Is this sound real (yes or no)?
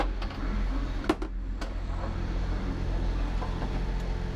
yes